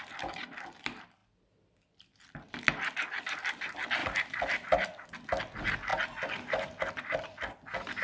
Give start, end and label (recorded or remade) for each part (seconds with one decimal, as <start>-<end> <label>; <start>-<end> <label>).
0.0-8.0 recorded